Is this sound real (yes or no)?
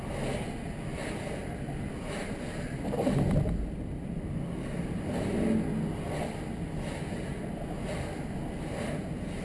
yes